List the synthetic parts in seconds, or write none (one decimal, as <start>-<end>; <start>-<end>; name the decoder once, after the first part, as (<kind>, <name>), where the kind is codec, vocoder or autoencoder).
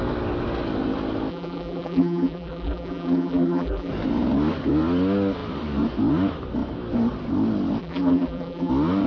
1.3-3.9 (vocoder, BigVGAN v2); 7.8-8.7